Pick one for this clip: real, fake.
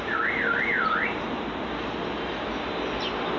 real